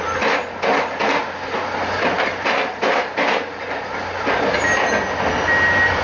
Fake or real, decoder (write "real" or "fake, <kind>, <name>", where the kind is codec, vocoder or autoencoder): real